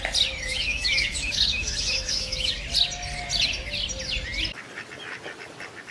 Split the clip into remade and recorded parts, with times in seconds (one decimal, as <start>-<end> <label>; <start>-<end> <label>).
0.0-0.5 recorded; 0.5-2.5 remade; 2.5-5.9 recorded